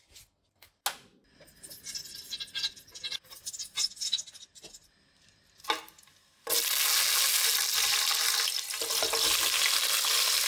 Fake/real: real